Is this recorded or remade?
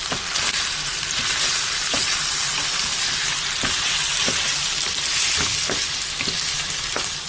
recorded